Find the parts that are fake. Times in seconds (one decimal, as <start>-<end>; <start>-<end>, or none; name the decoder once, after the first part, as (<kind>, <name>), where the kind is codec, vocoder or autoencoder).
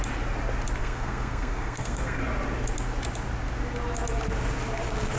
0.8-2.2 (codec, SNAC)